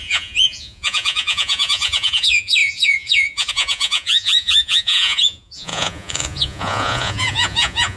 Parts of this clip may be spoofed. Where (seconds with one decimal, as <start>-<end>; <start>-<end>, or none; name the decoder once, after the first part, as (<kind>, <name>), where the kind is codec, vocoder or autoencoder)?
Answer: 0.0-8.0 (vocoder, Vocos)